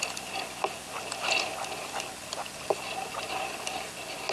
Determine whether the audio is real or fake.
real